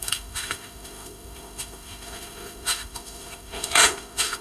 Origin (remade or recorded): remade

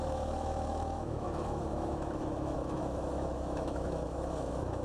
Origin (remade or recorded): remade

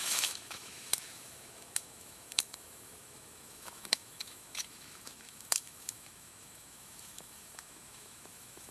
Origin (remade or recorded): remade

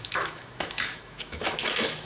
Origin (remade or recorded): remade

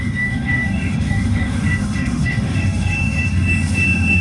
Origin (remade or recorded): remade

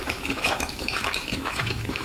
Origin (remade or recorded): remade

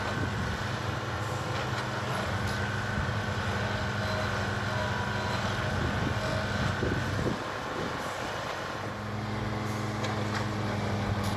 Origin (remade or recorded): recorded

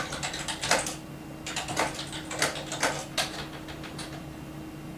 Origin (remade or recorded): recorded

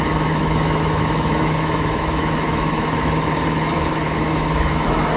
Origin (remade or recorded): remade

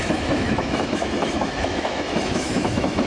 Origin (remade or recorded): remade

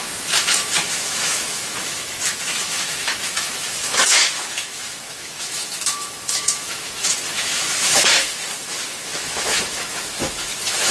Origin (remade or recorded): remade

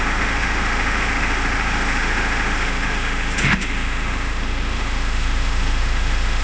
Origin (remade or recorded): remade